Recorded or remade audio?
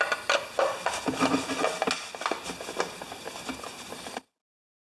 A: recorded